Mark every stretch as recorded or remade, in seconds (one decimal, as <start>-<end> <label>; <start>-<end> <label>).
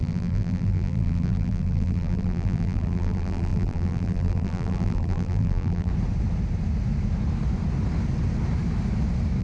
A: 0.0-5.9 remade; 5.9-9.4 recorded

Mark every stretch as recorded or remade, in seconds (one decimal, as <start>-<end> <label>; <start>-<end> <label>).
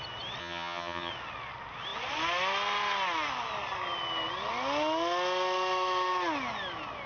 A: 0.0-0.4 recorded; 0.4-1.1 remade; 1.1-7.1 recorded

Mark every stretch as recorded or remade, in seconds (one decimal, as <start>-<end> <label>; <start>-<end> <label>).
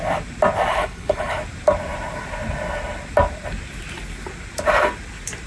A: 0.0-0.7 recorded; 0.7-1.4 remade; 1.4-5.5 recorded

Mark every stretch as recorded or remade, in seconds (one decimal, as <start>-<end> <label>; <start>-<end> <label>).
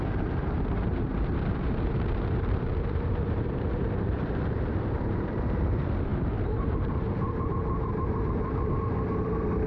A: 0.0-9.7 remade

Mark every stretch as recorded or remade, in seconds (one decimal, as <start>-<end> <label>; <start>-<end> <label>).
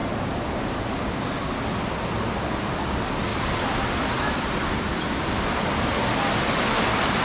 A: 0.0-3.3 recorded; 3.3-5.3 remade; 5.3-7.2 recorded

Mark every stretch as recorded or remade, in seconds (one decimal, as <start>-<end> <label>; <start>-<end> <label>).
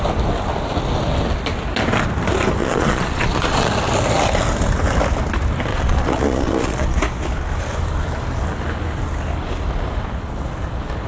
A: 0.0-2.6 recorded; 2.6-3.7 remade; 3.7-5.7 recorded; 5.7-7.0 remade; 7.0-11.1 recorded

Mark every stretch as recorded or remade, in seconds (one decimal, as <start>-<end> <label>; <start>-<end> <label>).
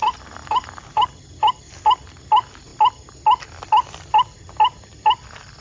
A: 0.0-5.6 recorded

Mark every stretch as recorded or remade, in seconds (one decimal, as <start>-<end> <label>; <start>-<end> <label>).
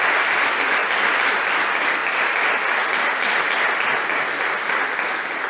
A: 0.0-5.5 recorded